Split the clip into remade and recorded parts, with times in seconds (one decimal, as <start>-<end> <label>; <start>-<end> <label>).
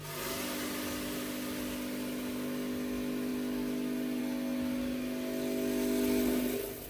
0.0-6.9 recorded